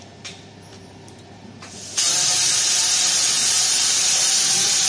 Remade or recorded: remade